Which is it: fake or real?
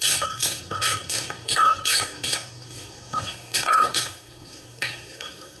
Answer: fake